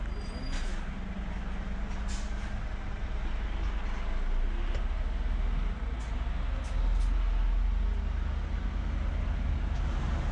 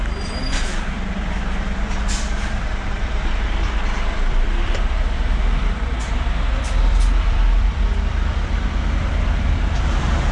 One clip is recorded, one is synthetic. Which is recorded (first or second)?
first